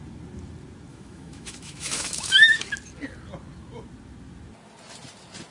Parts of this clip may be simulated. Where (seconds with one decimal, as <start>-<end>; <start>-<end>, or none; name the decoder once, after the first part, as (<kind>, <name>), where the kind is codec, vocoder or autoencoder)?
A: 0.9-2.7 (autoencoder, DAC-VAE)